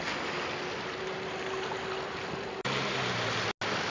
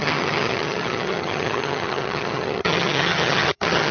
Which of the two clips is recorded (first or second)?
first